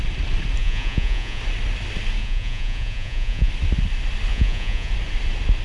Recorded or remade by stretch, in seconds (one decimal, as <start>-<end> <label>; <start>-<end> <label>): 0.0-0.6 recorded; 0.6-1.4 remade; 1.4-2.2 recorded; 2.2-3.5 remade; 3.5-4.3 recorded; 4.3-4.9 remade; 4.9-5.6 recorded

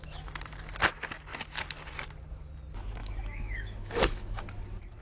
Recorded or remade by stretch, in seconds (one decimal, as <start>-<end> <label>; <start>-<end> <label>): 0.0-3.0 recorded; 3.0-4.4 remade; 4.4-5.0 recorded

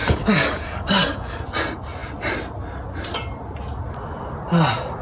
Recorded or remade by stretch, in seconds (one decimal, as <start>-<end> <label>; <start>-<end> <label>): 0.0-1.4 remade; 1.4-5.0 recorded

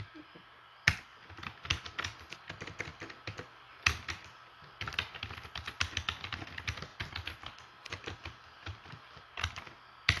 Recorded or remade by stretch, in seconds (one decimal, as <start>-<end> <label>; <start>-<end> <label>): 0.0-10.2 recorded

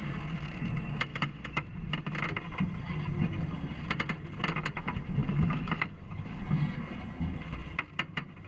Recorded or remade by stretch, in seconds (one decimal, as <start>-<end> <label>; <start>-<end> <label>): 0.0-1.1 recorded; 1.1-1.7 remade; 1.7-5.2 recorded; 5.2-6.4 remade; 6.4-8.5 recorded

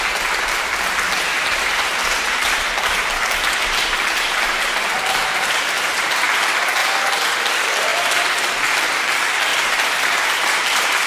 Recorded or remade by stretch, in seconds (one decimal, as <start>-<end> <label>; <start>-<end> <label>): 0.0-1.3 recorded; 1.3-6.2 remade; 6.2-9.5 recorded; 9.5-10.5 remade; 10.5-11.1 recorded